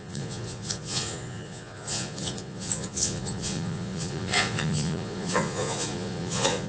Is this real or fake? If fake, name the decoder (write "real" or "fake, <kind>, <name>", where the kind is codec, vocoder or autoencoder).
fake, vocoder, Vocos